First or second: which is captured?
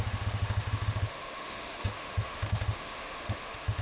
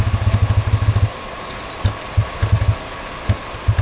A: second